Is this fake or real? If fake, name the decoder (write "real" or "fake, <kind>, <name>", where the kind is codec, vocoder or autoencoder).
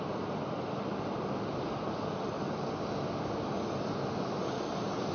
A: real